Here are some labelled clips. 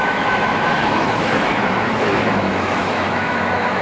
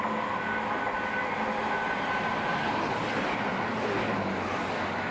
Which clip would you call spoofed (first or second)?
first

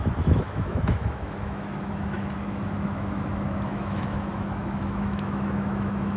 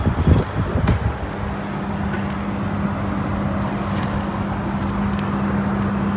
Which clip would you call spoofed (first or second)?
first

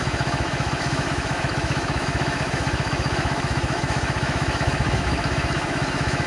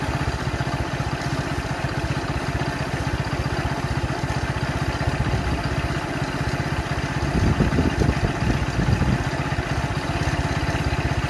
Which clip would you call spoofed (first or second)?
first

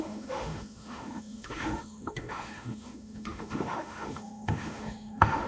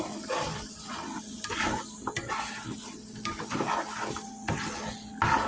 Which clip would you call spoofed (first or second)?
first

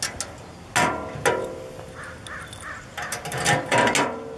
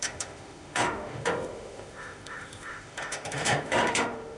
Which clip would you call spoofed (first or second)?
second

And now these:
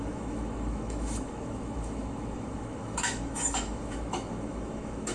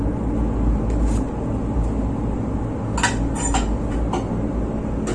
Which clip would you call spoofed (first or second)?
first